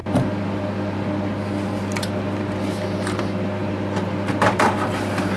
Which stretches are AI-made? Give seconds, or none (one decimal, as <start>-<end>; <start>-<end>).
0.0-3.2; 3.6-5.4